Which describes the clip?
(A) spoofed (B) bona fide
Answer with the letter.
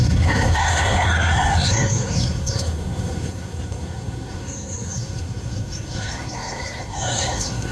A